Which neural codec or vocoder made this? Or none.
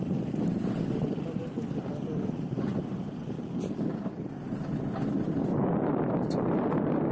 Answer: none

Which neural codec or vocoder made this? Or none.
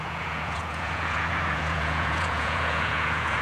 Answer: vocoder, Vocos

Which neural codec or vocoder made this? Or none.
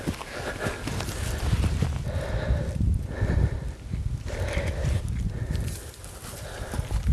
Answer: none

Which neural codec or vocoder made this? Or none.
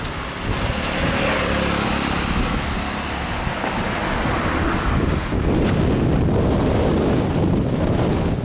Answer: none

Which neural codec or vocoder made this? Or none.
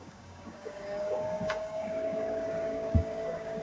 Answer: codec, DAC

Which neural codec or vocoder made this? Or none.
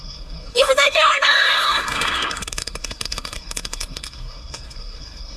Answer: codec, SNAC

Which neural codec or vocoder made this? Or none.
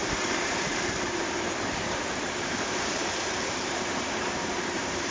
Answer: vocoder, BigVGAN v2